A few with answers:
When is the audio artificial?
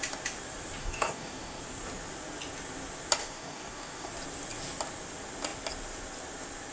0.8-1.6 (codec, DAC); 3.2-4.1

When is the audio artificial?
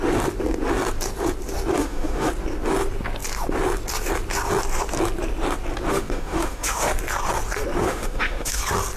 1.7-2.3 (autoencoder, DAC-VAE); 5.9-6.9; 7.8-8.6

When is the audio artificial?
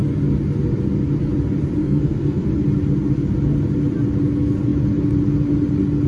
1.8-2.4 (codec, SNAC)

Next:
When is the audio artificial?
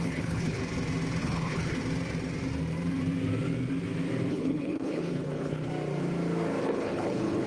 0.0-0.6 (codec, HILCodec); 1.2-1.8; 4.3-5.7; 6.6-7.5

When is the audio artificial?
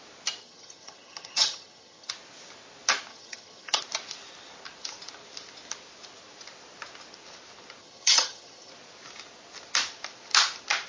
0.4-2.1 (vocoder, HiFi-GAN); 3.1-3.8; 7.8-8.7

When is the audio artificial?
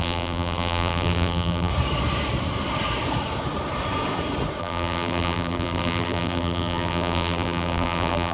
0.0-1.7 (vocoder, BigVGAN v2); 4.6-8.3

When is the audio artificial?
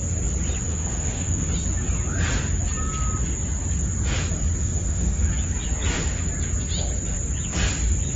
0.7-1.5 (autoencoder, DAC-VAE); 4.6-5.3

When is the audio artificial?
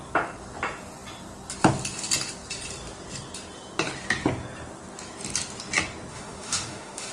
6.1-7.1 (autoencoder, DAC-VAE)